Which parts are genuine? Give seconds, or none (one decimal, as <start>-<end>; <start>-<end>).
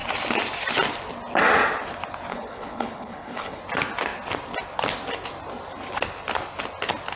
0.0-2.3; 3.6-7.2